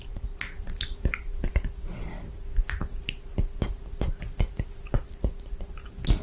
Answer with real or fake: real